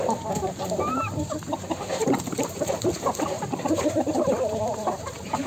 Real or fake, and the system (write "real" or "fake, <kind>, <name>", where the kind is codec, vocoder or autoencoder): fake, vocoder, BigVGAN v2